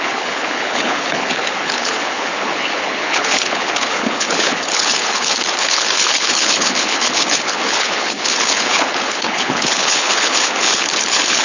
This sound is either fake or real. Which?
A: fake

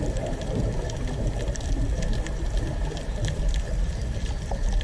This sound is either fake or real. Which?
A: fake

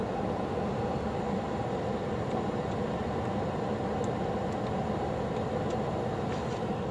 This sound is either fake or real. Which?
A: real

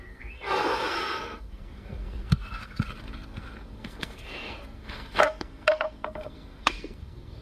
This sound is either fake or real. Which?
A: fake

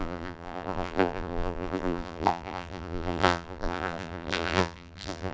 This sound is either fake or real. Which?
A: fake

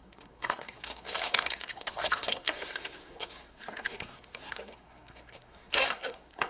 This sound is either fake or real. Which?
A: fake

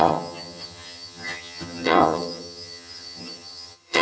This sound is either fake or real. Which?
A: fake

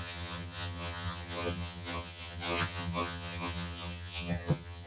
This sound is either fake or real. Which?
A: fake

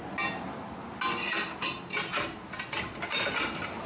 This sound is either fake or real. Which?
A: real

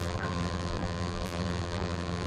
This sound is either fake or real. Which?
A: fake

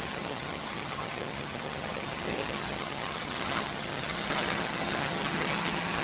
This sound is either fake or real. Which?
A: fake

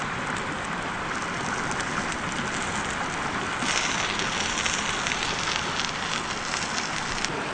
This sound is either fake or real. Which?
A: real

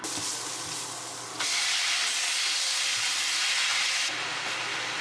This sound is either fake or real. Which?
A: real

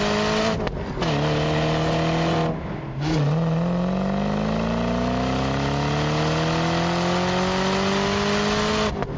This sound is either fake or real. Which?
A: real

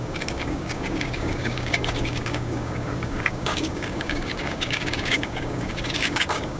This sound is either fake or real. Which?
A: fake